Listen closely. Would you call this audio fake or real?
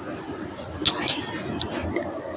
real